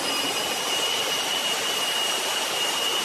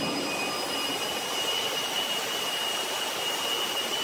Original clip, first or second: second